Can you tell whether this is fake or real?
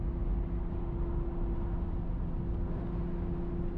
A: real